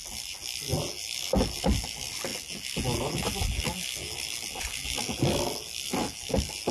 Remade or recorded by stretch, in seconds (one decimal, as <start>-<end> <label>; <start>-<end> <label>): 0.0-6.7 recorded